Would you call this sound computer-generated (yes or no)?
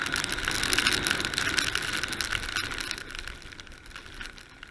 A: no